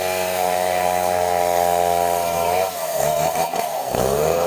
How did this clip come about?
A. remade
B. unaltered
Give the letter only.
A